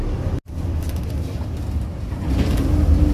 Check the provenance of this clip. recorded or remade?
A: recorded